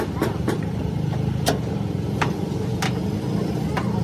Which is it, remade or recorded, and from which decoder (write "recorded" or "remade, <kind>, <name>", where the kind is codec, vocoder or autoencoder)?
recorded